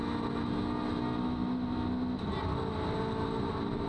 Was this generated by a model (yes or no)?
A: no